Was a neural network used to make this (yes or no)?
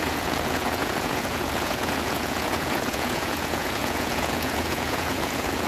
yes